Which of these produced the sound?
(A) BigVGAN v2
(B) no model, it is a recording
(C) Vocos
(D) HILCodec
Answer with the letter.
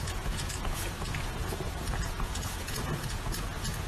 C